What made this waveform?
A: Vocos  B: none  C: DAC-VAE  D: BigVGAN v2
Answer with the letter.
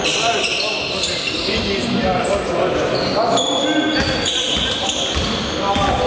B